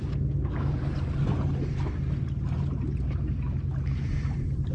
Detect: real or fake real